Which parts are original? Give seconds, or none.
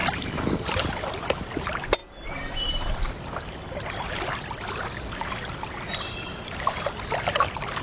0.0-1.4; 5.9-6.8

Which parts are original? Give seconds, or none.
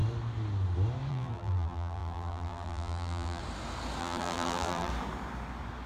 0.0-1.1; 3.4-4.0; 4.9-5.9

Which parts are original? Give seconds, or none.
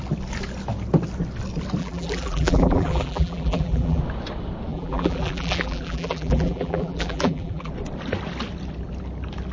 0.0-1.8; 4.0-4.7; 7.7-9.5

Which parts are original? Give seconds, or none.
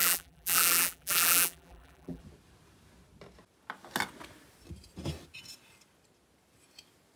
2.2-7.2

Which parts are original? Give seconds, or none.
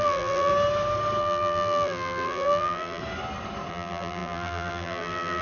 0.5-1.2; 3.0-3.7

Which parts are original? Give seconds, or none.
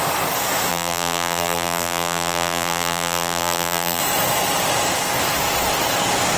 0.0-0.7; 4.0-6.4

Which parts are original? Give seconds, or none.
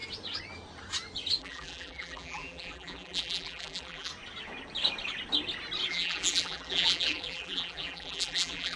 0.0-1.4; 4.1-5.9